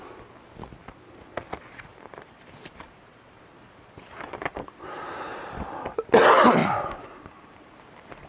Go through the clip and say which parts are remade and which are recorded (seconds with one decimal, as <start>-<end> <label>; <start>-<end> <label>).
0.0-1.9 recorded; 1.9-5.4 remade; 5.4-6.6 recorded; 6.6-7.5 remade; 7.5-8.3 recorded